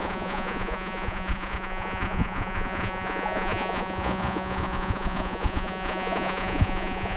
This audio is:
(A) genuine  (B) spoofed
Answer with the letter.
B